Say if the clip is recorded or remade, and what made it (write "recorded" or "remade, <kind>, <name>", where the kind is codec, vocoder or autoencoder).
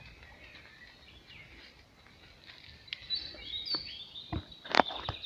recorded